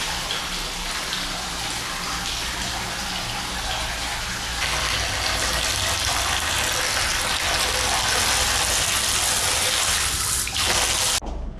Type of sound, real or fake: real